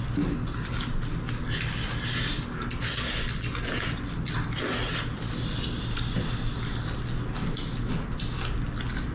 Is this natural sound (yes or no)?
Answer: yes